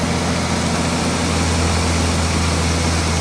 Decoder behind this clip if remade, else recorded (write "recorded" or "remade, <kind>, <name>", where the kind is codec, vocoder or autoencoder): recorded